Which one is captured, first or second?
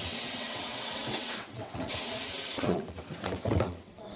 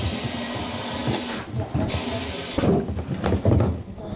second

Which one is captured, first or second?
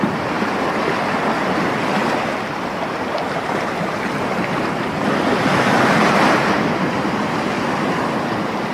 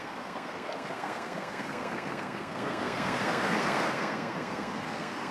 first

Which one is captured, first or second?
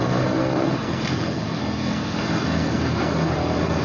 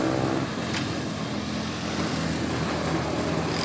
second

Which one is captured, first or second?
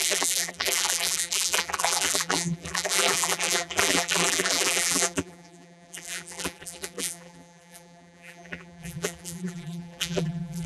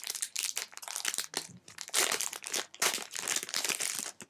second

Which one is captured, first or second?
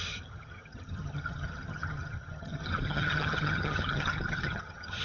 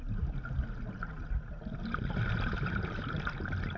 second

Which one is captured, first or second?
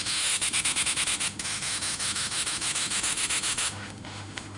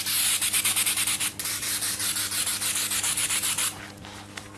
second